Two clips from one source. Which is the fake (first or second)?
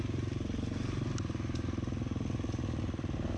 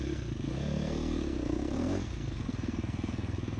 second